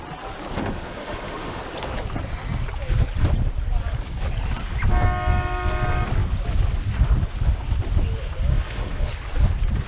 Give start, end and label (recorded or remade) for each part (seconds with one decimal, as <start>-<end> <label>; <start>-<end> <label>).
0.0-0.6 recorded; 0.6-1.6 remade; 1.6-8.5 recorded; 8.5-9.1 remade; 9.1-9.9 recorded